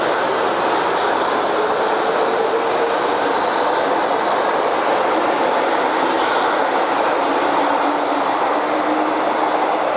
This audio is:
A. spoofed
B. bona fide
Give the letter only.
B